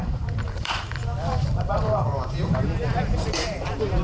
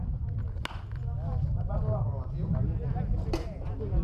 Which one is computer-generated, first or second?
first